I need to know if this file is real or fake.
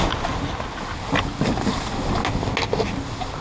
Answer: real